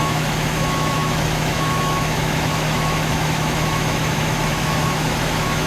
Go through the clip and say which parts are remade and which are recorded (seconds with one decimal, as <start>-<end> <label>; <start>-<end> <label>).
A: 0.0-5.7 remade